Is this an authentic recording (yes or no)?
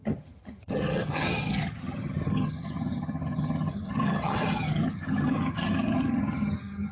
no